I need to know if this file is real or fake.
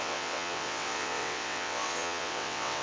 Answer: fake